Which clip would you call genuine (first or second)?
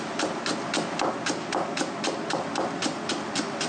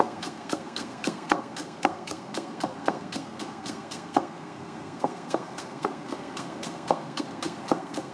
first